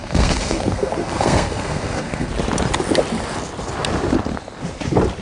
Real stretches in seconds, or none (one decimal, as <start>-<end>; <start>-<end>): 2.3-5.2